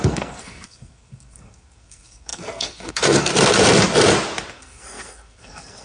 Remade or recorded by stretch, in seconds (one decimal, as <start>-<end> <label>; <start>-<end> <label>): 0.0-3.3 remade; 3.3-4.5 recorded; 4.5-5.8 remade